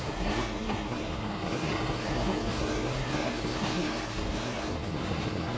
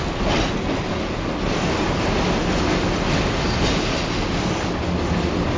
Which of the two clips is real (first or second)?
second